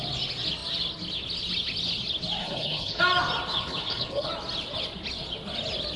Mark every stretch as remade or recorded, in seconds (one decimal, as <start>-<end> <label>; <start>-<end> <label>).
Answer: 0.0-2.4 recorded; 2.4-3.0 remade; 3.0-3.5 recorded; 3.5-4.3 remade; 4.3-6.0 recorded